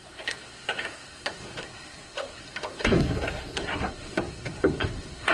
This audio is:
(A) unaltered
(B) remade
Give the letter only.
B